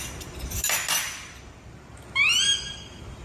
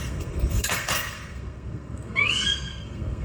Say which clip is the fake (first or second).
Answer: second